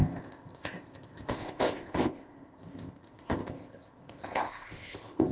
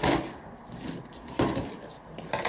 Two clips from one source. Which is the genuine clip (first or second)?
second